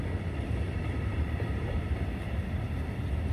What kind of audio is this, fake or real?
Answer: fake